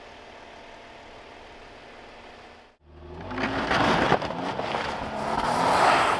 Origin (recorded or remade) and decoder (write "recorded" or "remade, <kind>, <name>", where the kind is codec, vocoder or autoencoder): recorded